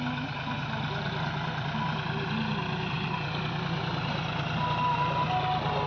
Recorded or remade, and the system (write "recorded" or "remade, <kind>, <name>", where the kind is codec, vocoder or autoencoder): recorded